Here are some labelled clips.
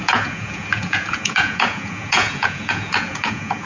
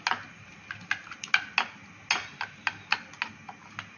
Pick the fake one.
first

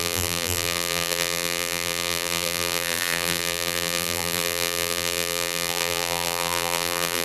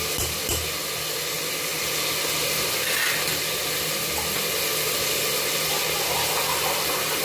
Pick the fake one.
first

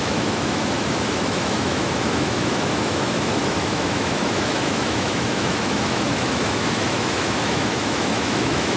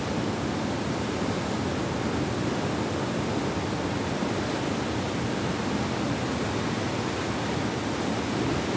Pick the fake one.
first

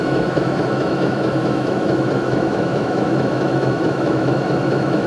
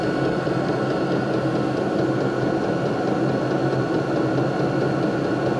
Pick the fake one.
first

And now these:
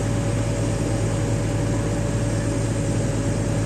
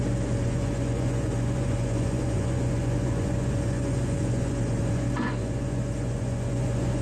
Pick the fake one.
second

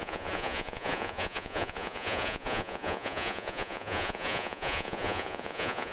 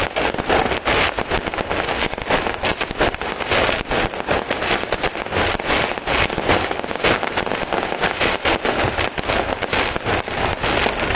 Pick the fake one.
first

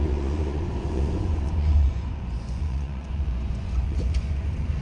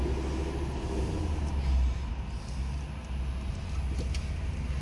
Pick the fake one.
first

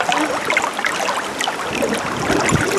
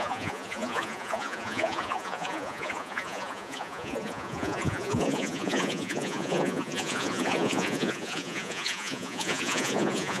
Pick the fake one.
second